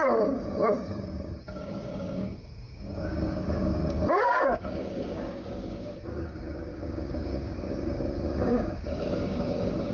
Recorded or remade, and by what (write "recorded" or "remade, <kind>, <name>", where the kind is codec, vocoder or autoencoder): remade, codec, DAC